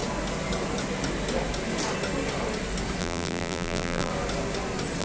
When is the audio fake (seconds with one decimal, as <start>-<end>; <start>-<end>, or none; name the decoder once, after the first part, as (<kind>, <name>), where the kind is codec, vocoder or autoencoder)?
3.0-4.1 (vocoder, BigVGAN v2)